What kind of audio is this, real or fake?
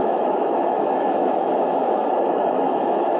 fake